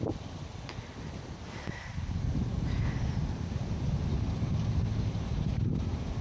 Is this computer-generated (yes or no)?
no